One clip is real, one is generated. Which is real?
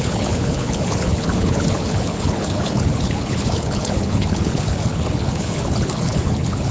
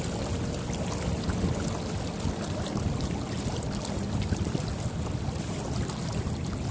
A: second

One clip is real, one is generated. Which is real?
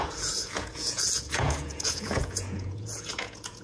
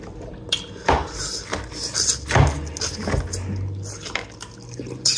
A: second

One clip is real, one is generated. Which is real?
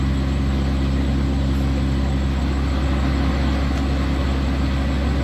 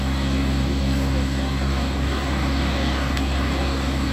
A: first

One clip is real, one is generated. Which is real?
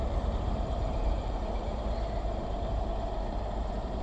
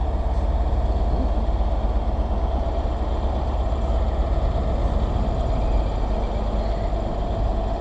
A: second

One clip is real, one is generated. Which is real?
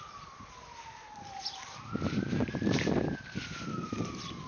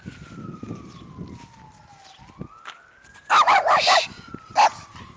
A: second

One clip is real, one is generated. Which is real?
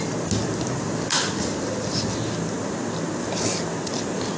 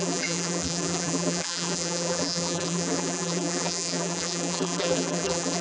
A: first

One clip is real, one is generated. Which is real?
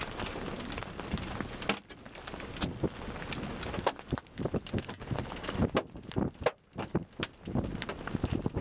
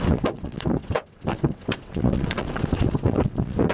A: first